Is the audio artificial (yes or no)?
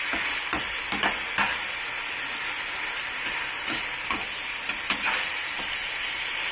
no